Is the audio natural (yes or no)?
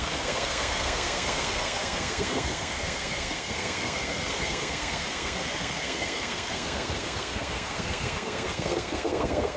no